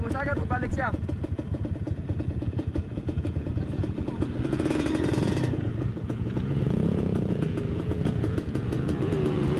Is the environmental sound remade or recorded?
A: remade